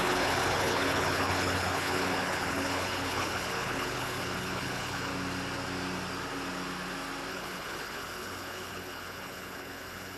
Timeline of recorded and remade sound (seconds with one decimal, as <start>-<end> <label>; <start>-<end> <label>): 0.0-5.1 remade; 5.1-7.3 recorded; 7.3-10.2 remade